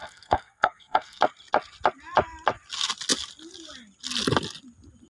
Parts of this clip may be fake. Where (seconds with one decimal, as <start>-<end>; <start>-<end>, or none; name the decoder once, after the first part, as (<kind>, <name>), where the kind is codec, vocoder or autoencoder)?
0.0-1.2 (codec, SNAC)